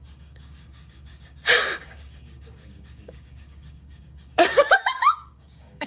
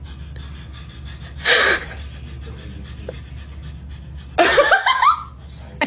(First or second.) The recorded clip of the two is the second